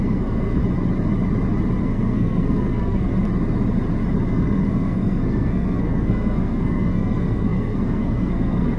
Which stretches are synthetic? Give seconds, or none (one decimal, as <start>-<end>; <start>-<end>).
0.0-0.6; 1.8-3.1; 4.3-8.8